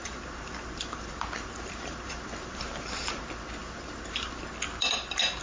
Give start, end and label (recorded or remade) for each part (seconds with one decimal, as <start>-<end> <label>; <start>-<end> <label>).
0.0-3.2 remade; 3.2-3.6 recorded; 3.6-4.3 remade; 4.3-5.4 recorded